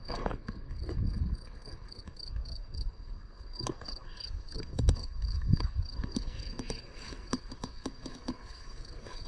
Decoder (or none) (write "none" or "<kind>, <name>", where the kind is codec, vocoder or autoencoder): codec, SNAC